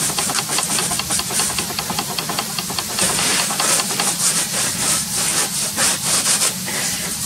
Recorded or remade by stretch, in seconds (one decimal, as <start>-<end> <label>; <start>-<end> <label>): 0.0-7.3 recorded